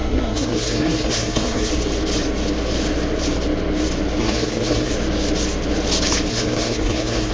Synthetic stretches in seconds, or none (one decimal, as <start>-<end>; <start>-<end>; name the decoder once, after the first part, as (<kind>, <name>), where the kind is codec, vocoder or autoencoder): 0.0-1.7 (codec, SNAC); 4.2-4.9; 6.3-7.3